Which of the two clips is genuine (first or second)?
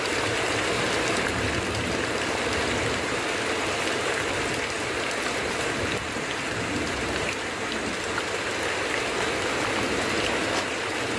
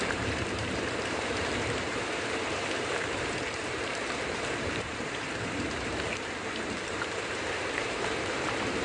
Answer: first